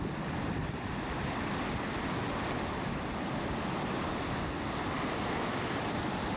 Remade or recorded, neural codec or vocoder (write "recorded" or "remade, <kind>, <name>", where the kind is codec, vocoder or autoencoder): recorded